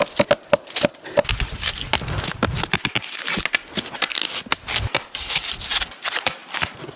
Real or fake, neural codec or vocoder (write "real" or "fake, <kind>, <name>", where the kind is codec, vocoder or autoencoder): real